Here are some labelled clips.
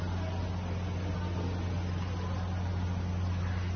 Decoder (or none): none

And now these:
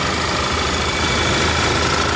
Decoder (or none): none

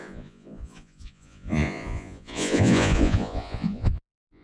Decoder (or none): vocoder, Vocos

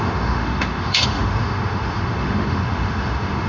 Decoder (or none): autoencoder, DAC-VAE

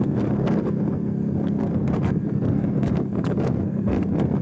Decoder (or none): codec, SNAC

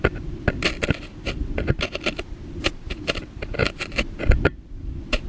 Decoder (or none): vocoder, BigVGAN v2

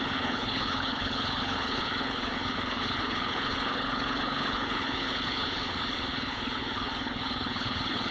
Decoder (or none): codec, HILCodec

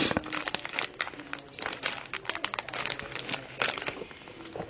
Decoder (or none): none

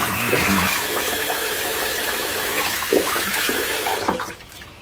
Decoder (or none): autoencoder, DAC-VAE